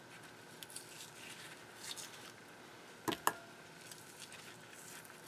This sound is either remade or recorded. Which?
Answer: recorded